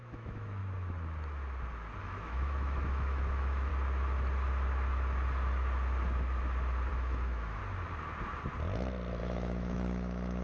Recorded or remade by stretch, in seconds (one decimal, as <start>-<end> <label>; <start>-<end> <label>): 0.0-0.6 remade; 0.6-2.0 recorded; 2.0-3.7 remade; 3.7-6.9 recorded; 6.9-7.6 remade; 7.6-9.2 recorded; 9.2-10.4 remade